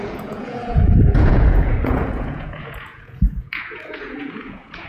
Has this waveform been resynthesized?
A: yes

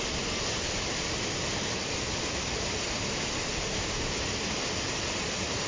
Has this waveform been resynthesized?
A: no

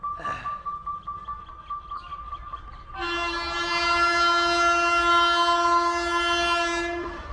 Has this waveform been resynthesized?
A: no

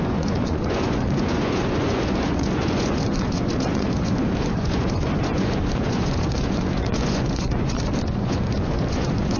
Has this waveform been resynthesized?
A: yes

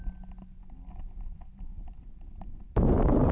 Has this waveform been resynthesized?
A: no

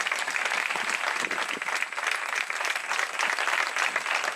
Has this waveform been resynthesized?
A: no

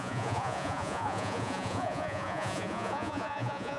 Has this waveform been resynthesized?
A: yes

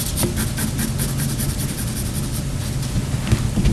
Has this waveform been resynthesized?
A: no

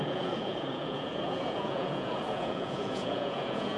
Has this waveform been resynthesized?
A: yes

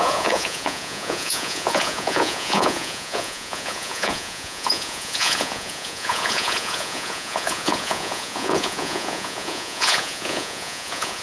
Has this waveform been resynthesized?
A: yes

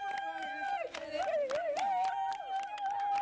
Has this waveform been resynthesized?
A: no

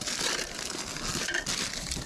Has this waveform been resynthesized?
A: no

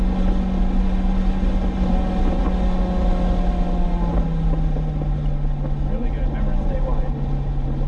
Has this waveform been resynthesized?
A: no